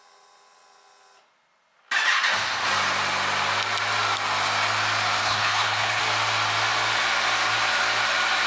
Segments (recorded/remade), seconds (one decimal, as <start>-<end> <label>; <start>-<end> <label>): 0.0-5.2 recorded; 5.2-6.0 remade; 6.0-8.5 recorded